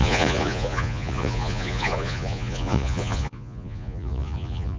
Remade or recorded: remade